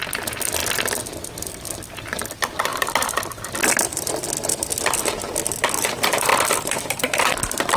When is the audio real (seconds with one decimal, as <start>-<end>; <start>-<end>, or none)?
0.0-0.6; 1.5-2.7; 4.0-6.3